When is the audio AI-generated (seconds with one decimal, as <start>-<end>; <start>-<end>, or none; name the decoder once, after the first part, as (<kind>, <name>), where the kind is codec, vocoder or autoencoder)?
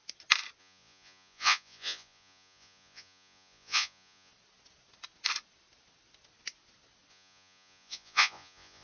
0.6-4.3 (vocoder, Vocos); 7.1-8.8